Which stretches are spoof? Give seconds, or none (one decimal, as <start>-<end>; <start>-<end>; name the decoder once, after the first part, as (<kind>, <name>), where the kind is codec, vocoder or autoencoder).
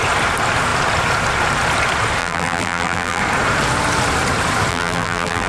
2.2-3.2 (vocoder, BigVGAN v2); 4.7-5.5